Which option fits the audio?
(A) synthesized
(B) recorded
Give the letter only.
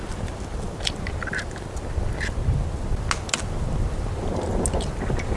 B